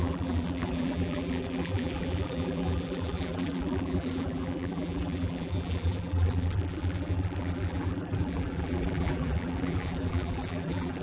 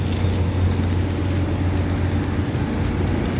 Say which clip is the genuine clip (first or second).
second